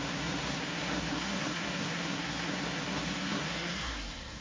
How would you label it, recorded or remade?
remade